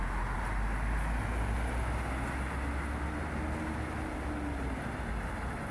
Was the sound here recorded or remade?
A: recorded